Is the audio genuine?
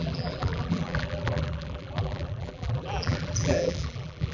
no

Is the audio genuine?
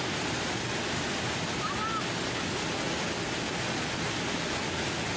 yes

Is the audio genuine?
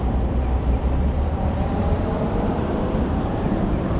no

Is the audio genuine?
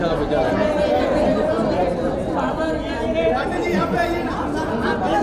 yes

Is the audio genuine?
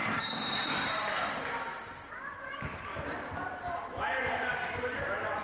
yes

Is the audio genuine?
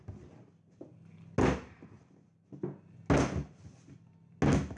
yes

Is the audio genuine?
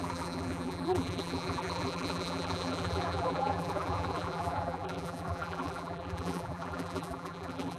no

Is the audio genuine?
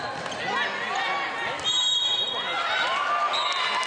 yes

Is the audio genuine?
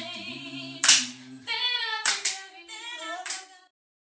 no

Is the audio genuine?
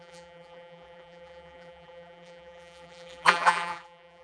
no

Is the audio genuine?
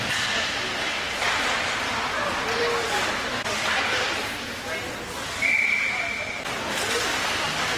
no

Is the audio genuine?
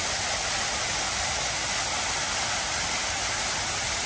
yes